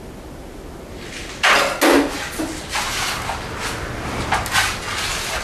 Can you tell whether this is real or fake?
real